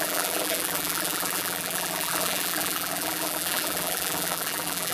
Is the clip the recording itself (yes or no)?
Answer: no